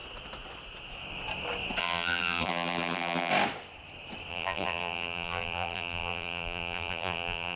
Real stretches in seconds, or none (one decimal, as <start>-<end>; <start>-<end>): 0.0-1.8; 3.3-4.3